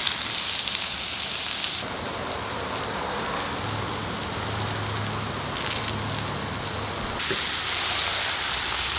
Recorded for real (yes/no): yes